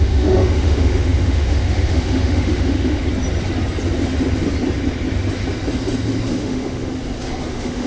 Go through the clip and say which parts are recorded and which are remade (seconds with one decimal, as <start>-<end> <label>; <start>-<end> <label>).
0.0-3.0 remade; 3.0-6.3 recorded; 6.3-6.9 remade; 6.9-7.5 recorded; 7.5-7.9 remade